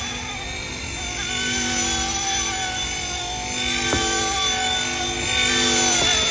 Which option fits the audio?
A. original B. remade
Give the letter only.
A